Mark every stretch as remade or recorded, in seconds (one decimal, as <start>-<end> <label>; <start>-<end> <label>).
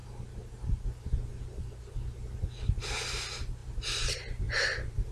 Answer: 0.0-3.6 recorded; 3.6-5.1 remade